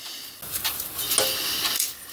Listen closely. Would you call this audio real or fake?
real